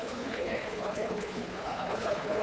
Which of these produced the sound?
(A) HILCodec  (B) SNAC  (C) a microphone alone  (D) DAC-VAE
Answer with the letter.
A